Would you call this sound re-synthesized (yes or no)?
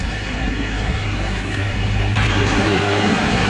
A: yes